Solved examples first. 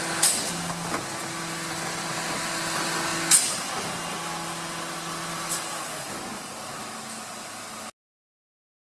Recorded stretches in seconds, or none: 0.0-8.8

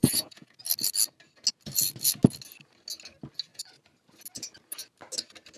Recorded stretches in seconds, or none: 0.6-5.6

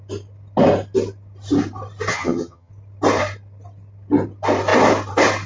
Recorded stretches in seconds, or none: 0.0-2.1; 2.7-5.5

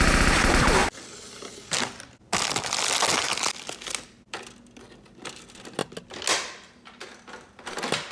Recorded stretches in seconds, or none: 0.0-8.1

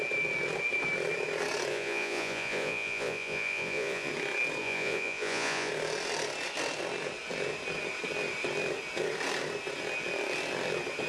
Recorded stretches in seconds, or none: 0.0-1.7; 4.1-4.6; 5.7-11.1

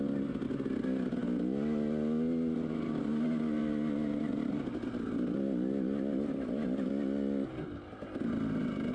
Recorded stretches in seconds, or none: 0.0-8.9

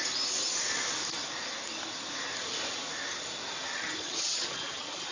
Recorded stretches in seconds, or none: 0.0-3.7